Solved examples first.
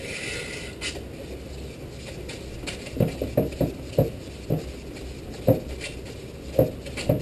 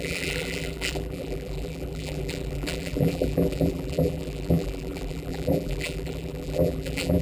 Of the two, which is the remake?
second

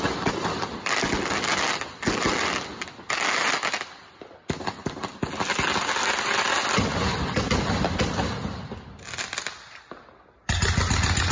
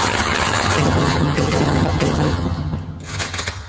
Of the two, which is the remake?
second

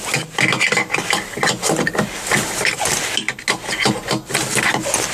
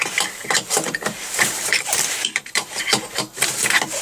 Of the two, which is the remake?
second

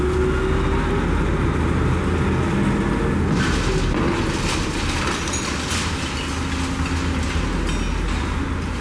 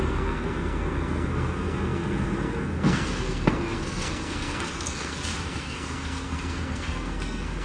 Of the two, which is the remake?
second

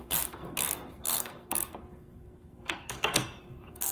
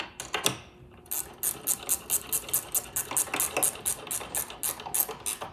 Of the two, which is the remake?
first